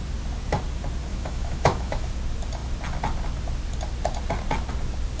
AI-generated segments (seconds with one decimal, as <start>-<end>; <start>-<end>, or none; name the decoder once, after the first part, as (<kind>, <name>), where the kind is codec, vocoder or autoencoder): 1.1-2.1 (autoencoder, DAC-VAE)